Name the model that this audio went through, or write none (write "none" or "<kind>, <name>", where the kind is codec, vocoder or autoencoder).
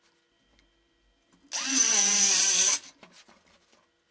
none